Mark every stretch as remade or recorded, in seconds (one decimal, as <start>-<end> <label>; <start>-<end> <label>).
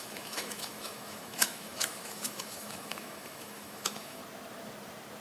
0.0-4.2 remade; 4.2-5.2 recorded